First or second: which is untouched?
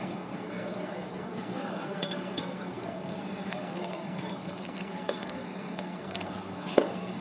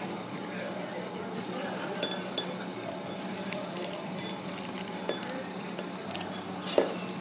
second